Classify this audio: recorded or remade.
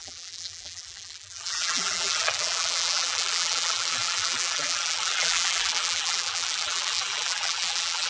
remade